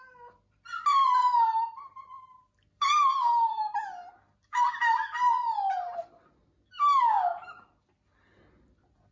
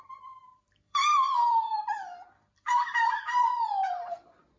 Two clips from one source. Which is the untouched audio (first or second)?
first